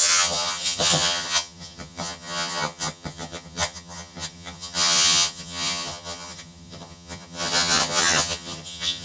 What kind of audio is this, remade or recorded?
remade